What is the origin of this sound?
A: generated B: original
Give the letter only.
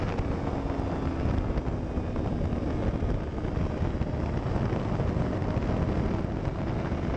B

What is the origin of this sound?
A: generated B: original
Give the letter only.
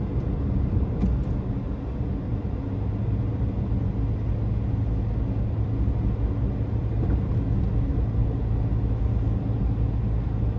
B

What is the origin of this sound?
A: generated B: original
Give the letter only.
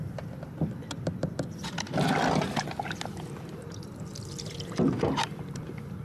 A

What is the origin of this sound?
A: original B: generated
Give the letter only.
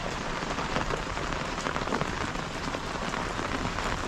B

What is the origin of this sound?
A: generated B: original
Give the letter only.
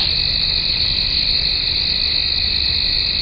B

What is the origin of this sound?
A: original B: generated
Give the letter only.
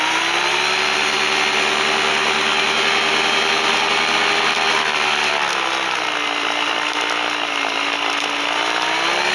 A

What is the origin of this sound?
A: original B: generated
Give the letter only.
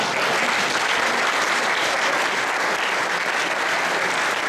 A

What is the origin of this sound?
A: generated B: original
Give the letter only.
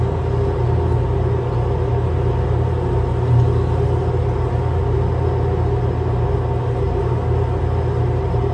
B